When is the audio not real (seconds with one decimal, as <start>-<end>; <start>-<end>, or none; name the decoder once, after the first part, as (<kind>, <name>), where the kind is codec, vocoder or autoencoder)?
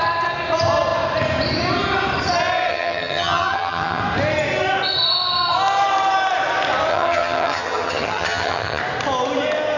2.7-4.0 (vocoder, HiFi-GAN); 6.9-8.8